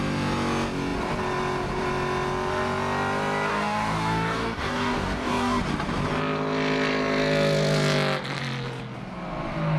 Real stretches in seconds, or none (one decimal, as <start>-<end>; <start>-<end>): 0.0-3.5; 5.6-9.8